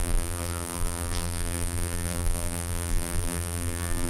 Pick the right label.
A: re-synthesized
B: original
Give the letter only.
A